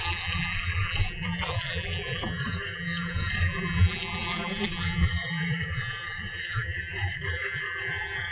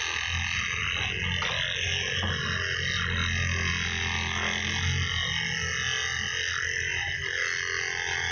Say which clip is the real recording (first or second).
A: second